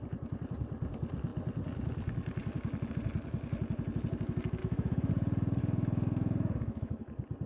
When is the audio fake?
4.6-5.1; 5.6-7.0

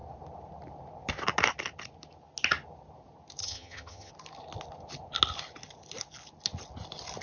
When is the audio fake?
3.4-4.1

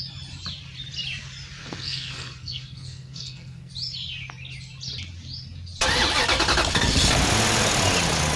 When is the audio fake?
1.6-3.7

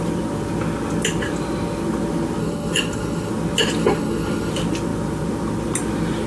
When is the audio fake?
2.4-3.3; 3.8-4.5

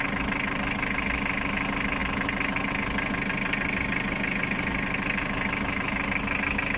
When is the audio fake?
none